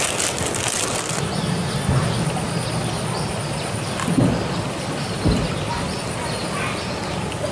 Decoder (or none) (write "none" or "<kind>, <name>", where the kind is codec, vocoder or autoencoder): none